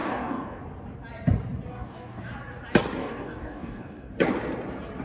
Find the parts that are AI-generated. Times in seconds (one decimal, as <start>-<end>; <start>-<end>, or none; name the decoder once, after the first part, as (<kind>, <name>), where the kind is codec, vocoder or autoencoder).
0.0-0.6 (codec, DAC); 1.7-2.2; 3.0-4.1